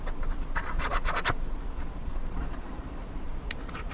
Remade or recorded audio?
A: remade